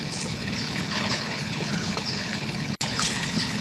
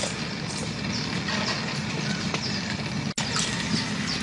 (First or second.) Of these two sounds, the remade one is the first